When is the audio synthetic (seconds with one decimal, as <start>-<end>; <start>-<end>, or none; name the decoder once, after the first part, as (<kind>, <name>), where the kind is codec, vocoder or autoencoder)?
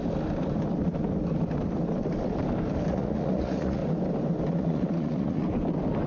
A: 2.9-3.8 (vocoder, Vocos); 4.5-5.4